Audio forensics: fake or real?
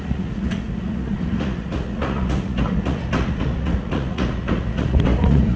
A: fake